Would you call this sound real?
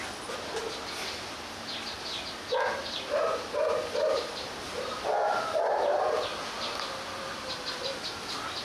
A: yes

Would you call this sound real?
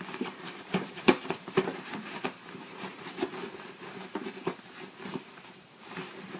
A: no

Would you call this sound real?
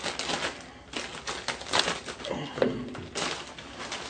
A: yes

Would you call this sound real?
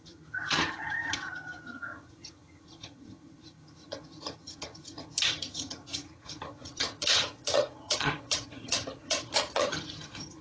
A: no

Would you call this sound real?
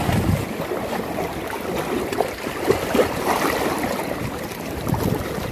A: yes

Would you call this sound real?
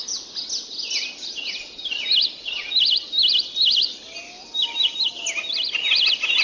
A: yes